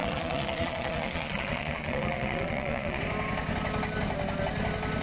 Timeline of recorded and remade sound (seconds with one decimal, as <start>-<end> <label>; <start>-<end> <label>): 0.0-3.0 remade; 3.0-5.0 recorded